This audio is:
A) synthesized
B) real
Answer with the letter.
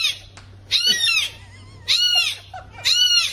B